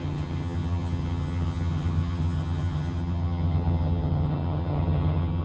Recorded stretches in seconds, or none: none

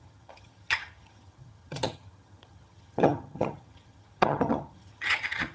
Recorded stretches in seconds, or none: none

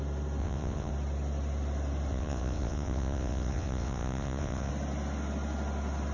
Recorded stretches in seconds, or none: 0.0-0.4; 0.9-2.1; 4.7-6.1